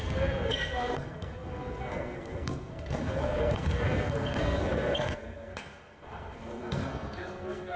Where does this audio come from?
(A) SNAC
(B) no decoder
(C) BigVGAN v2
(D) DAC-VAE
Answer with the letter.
A